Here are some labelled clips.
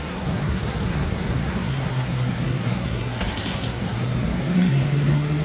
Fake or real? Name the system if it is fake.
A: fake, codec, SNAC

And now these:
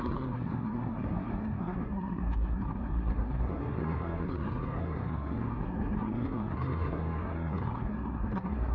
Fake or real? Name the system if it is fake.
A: fake, codec, SNAC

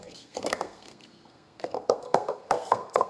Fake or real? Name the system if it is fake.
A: fake, codec, SNAC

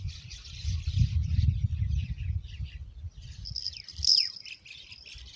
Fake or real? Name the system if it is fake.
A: real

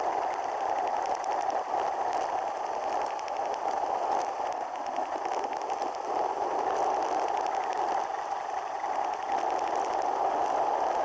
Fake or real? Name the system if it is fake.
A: real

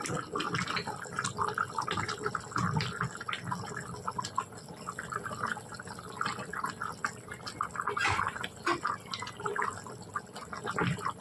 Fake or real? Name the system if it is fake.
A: real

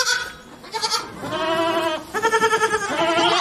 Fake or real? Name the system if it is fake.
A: real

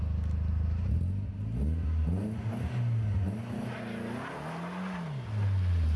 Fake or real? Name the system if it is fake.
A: real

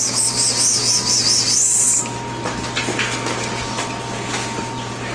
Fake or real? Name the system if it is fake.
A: real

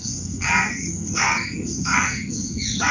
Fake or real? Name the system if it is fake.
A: fake, codec, SNAC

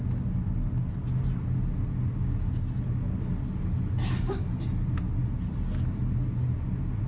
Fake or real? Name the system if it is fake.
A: real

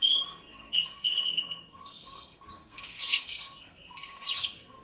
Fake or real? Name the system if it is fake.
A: fake, codec, SNAC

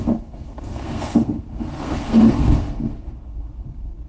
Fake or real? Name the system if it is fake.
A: fake, codec, SNAC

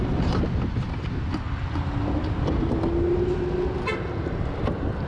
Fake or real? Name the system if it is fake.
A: real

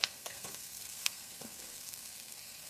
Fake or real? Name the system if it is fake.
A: fake, codec, SNAC